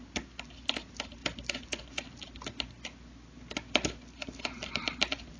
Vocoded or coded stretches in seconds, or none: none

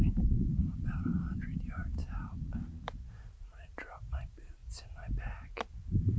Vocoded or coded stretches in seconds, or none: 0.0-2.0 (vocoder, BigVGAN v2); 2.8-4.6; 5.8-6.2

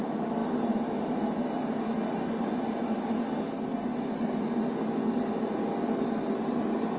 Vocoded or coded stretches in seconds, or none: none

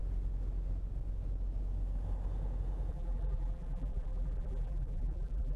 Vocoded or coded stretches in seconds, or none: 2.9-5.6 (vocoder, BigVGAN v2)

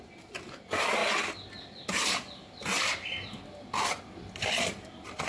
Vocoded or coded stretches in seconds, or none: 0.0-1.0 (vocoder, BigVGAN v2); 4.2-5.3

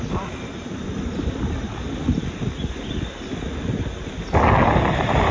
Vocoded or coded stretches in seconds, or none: 0.0-1.7 (vocoder, BigVGAN v2); 4.8-5.3